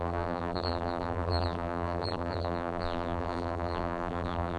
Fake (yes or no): yes